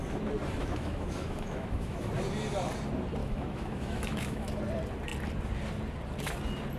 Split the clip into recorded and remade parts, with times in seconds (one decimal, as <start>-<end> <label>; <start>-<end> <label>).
0.0-0.6 recorded; 0.6-2.1 remade; 2.1-3.2 recorded; 3.2-4.6 remade; 4.6-6.8 recorded